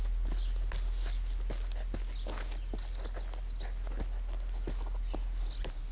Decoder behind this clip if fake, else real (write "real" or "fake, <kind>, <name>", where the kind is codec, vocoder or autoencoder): real